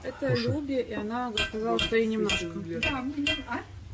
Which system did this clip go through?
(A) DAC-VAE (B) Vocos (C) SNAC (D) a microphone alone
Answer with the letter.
D